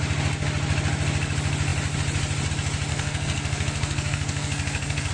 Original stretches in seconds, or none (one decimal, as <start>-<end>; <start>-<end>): 0.0-2.9